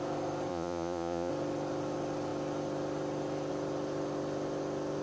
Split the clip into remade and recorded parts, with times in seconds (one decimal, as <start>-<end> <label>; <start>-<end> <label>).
0.0-0.5 recorded; 0.5-1.3 remade; 1.3-5.0 recorded